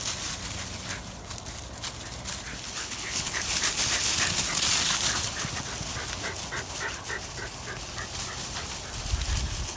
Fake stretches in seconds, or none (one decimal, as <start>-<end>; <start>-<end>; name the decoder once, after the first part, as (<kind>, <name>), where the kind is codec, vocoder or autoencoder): 2.8-3.4 (codec, HILCodec)